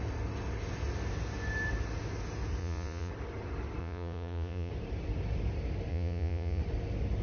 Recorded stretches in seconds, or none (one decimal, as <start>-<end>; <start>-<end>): 0.0-2.6; 3.1-3.8; 4.7-5.9; 6.6-7.2